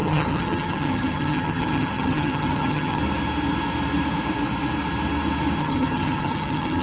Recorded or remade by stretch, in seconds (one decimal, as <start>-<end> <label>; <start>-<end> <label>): 0.0-3.0 remade; 3.0-5.6 recorded; 5.6-6.8 remade